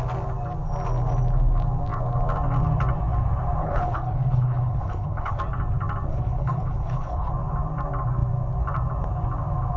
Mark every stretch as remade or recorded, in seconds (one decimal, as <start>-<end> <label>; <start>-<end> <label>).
0.0-3.6 recorded; 3.6-5.4 remade; 5.4-6.1 recorded; 6.1-7.3 remade; 7.3-9.8 recorded